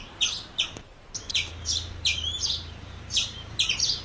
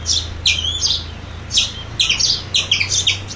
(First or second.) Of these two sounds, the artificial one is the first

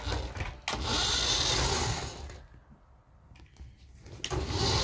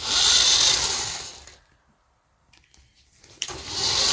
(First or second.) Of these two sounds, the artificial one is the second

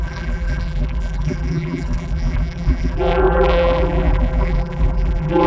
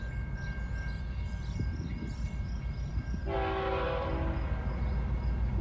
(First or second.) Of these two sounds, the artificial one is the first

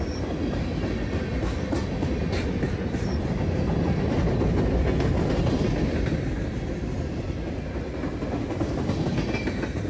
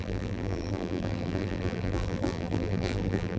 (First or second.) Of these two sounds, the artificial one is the second